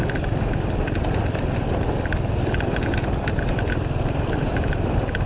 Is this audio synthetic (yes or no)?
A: no